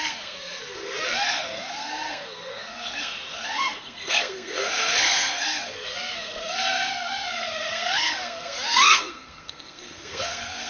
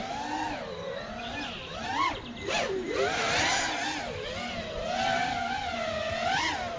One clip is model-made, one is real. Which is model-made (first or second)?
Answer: first